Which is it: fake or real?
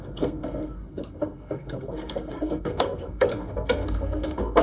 fake